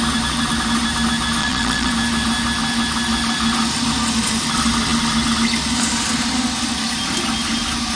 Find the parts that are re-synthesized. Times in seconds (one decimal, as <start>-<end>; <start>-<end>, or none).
1.4-1.9